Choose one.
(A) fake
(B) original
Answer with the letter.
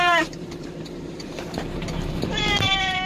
A